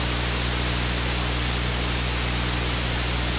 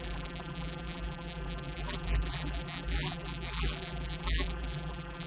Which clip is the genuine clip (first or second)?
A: first